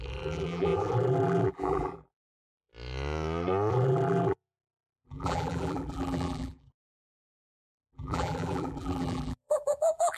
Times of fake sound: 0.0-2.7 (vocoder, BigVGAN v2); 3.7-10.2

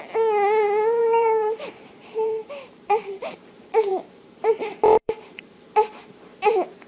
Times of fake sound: 1.0-3.4 (vocoder, BigVGAN v2); 3.9-6.5

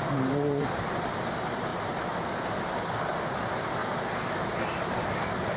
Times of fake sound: 0.0-1.7 (vocoder, BigVGAN v2); 3.3-3.8; 4.5-5.6

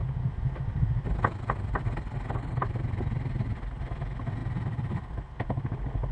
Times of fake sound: none

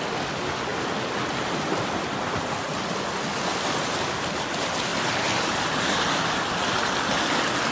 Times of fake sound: none